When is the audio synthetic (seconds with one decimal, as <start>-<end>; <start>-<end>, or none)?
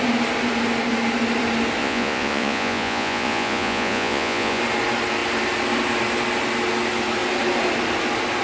1.8-4.6